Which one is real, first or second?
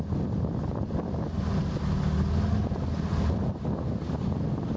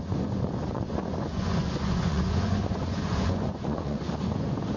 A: first